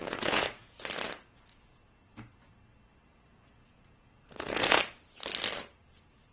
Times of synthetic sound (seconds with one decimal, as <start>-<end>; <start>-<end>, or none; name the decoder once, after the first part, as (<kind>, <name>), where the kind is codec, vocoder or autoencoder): 0.0-0.8 (vocoder, Vocos); 2.9-4.8